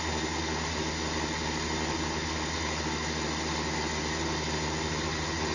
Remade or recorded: recorded